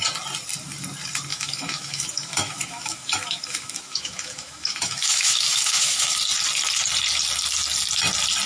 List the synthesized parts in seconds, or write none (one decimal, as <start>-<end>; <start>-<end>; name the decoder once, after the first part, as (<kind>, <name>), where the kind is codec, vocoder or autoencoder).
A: 1.3-6.2 (autoencoder, DAC-VAE)